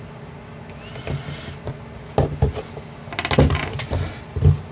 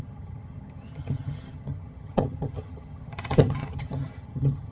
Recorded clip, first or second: first